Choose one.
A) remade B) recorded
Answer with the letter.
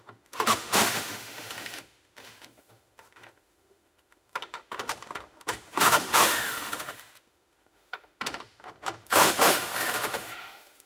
A